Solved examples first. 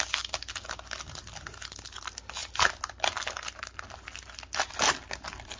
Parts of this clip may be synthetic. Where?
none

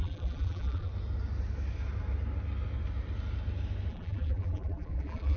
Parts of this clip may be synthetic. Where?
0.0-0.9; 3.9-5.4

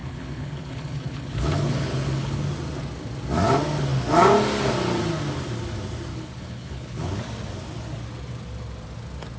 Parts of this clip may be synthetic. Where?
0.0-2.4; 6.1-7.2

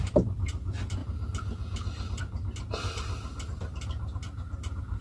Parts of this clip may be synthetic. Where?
none

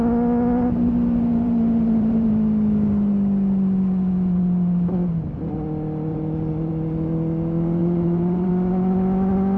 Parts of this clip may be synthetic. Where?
1.3-2.3; 6.1-6.7; 7.8-8.5